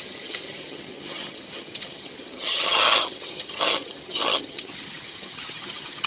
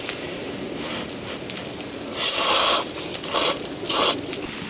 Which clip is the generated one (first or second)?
first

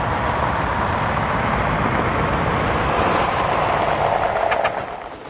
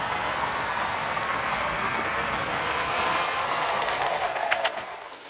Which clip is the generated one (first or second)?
second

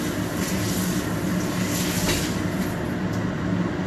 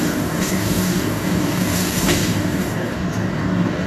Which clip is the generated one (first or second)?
second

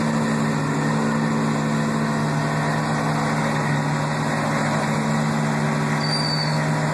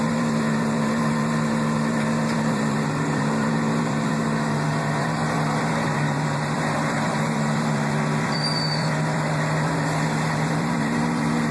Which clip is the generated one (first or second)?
second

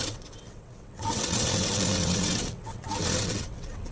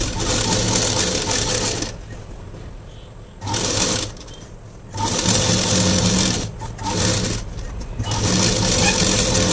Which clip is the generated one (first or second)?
first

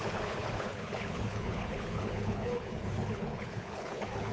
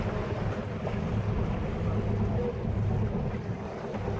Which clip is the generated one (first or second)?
first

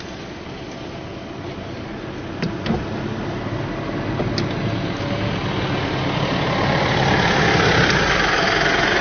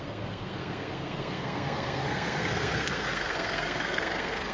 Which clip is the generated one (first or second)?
second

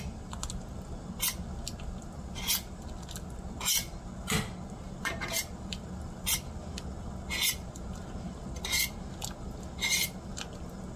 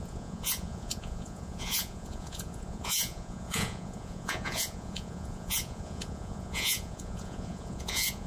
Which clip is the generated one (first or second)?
second